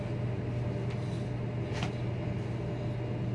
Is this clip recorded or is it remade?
recorded